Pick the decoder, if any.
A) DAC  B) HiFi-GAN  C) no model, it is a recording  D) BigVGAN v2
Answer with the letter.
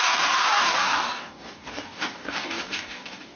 A